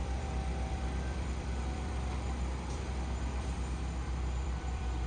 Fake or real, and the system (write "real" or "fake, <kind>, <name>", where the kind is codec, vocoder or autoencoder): fake, vocoder, BigVGAN v2